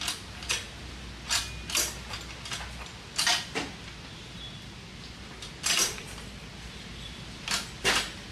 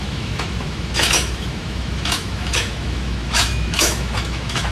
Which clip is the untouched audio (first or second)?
first